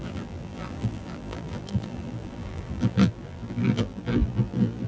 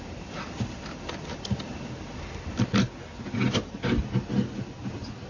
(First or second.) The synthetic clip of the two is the first